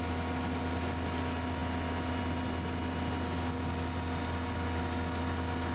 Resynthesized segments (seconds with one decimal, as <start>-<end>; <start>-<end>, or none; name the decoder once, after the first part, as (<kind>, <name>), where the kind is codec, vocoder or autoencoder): none